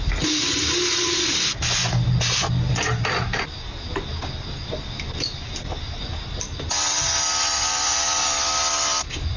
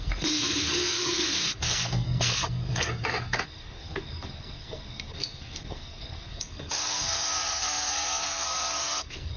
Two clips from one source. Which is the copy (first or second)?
second